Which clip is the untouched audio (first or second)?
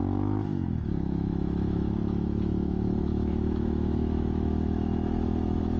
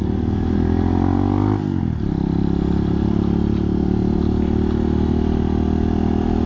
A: second